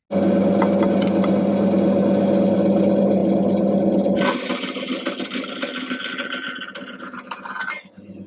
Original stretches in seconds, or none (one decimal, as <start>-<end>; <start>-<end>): 0.0-8.3